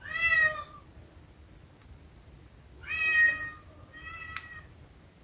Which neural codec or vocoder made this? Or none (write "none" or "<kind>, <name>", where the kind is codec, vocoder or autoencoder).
none